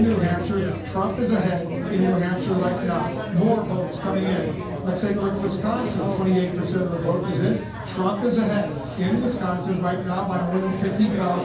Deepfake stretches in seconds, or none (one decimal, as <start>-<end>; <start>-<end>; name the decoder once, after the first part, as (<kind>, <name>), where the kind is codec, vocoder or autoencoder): 10.4-11.0 (codec, SNAC)